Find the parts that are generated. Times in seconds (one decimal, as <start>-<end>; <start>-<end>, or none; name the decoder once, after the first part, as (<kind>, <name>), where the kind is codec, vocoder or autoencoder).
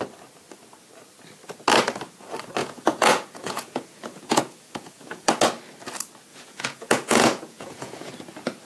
2.6-5.3 (vocoder, Vocos); 6.3-8.1